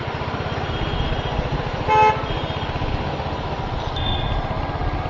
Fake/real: real